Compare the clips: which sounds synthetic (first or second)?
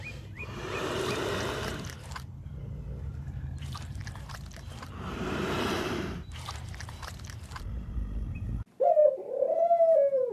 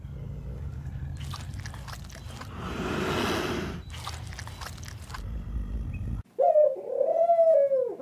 first